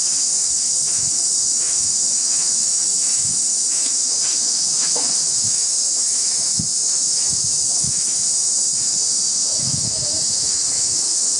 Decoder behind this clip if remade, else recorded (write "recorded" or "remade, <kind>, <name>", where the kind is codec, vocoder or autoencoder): remade, autoencoder, DAC-VAE